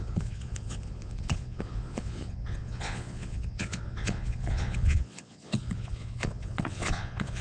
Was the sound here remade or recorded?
remade